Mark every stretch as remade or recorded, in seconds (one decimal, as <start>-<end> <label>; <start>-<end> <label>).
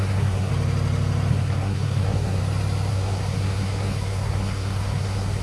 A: 0.0-0.5 remade; 0.5-1.3 recorded; 1.3-2.4 remade; 2.4-2.9 recorded; 2.9-5.4 remade